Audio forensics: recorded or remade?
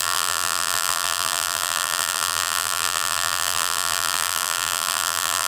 remade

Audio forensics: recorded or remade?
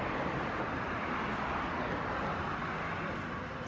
recorded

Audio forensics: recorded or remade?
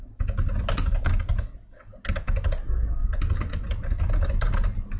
recorded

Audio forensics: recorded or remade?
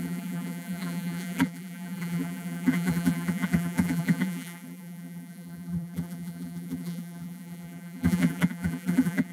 remade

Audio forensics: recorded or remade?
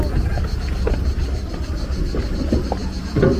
recorded